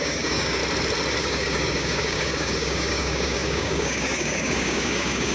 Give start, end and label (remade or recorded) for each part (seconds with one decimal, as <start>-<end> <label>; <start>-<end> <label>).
0.0-0.6 remade; 0.6-1.2 recorded; 1.2-5.3 remade